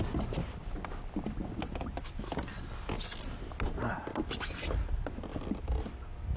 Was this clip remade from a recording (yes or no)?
no